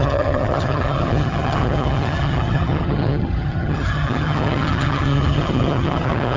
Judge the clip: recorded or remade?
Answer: remade